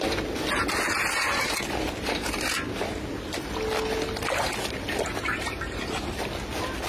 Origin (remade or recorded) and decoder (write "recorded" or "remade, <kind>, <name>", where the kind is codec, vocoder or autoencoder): recorded